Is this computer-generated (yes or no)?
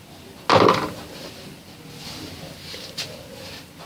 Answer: no